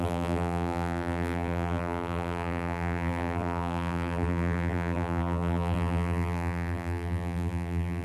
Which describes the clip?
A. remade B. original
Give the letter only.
A